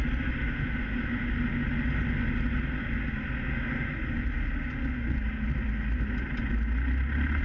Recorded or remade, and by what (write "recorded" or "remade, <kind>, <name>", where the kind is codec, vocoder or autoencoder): recorded